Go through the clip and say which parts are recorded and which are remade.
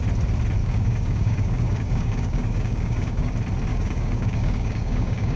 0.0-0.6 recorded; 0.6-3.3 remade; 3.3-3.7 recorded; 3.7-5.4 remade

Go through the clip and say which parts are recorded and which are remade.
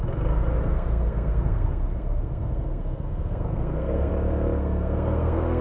0.0-0.7 recorded; 0.7-4.1 remade; 4.1-4.6 recorded; 4.6-5.6 remade